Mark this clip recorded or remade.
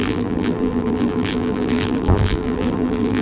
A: remade